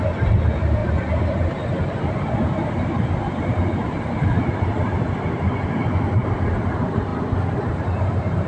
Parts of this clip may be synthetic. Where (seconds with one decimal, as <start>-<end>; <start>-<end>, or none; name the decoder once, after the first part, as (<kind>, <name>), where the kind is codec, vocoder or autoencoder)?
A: none